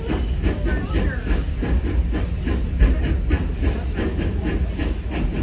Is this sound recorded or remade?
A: recorded